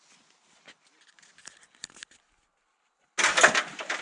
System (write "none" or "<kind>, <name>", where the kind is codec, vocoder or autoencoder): none